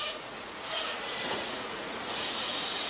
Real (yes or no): no